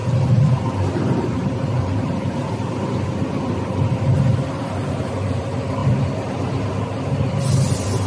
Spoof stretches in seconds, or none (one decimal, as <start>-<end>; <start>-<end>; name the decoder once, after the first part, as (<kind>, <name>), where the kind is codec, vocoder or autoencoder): 0.0-2.7 (vocoder, BigVGAN v2)